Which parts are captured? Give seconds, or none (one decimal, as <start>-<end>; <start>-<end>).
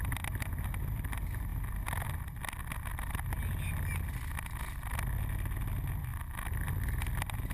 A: 0.0-7.5